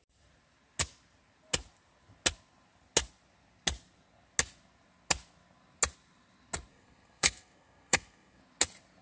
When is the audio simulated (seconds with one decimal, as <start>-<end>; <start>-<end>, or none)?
6.7-8.4